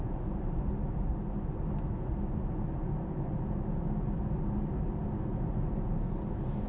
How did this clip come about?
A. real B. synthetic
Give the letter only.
A